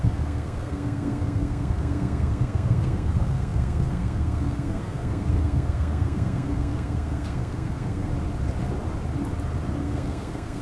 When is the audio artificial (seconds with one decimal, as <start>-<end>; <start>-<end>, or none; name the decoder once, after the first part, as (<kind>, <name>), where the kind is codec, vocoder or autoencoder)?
0.0-8.1 (codec, SNAC); 9.8-10.6